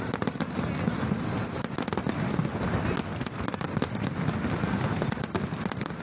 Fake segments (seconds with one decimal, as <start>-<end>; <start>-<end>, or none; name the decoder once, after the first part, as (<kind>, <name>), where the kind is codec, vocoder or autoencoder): none